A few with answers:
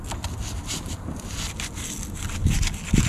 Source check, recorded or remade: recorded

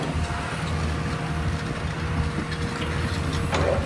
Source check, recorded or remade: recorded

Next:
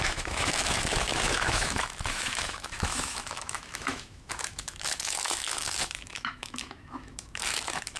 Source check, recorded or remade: remade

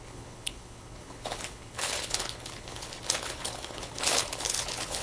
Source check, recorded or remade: remade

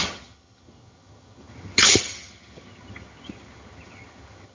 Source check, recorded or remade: remade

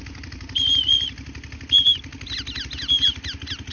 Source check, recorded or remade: recorded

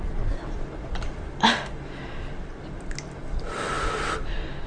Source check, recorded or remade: recorded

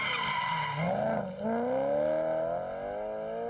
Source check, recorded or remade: recorded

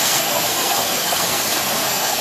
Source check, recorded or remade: remade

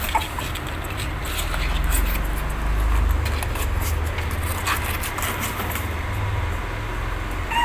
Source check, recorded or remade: recorded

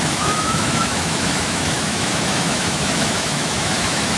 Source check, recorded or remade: remade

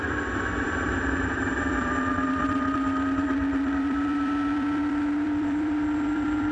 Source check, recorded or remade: remade